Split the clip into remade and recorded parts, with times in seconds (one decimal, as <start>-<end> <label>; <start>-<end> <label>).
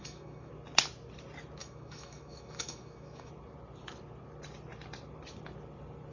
0.0-0.5 remade; 0.5-1.6 recorded; 1.6-3.3 remade; 3.3-6.1 recorded